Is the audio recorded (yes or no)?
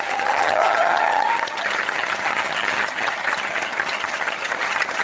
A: no